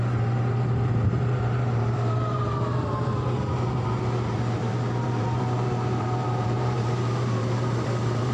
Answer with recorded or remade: remade